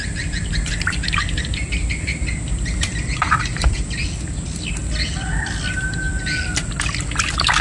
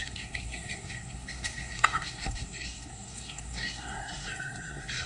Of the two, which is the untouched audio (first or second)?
first